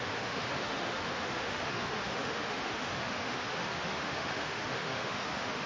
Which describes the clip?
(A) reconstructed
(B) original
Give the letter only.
A